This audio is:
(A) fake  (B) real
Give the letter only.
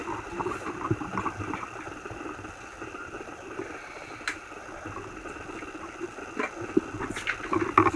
B